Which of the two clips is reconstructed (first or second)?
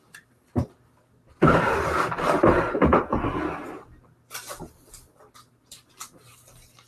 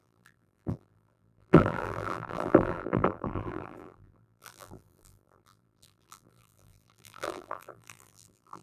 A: second